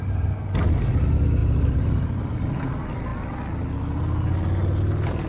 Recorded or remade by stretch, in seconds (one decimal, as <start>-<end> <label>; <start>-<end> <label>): 0.0-5.3 recorded